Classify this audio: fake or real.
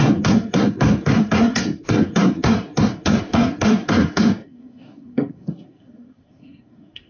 fake